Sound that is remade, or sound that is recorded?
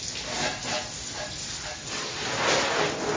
recorded